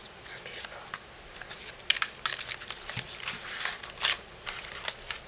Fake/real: real